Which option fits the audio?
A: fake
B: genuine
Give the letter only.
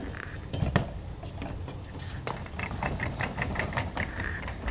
B